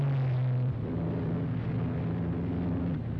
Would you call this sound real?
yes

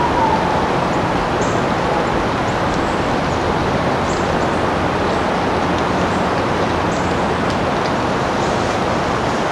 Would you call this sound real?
yes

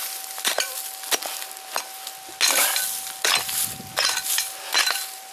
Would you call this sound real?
yes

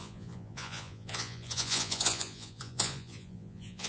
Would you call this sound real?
no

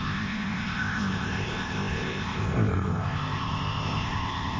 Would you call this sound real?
no